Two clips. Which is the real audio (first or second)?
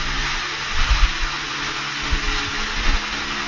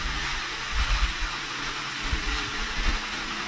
first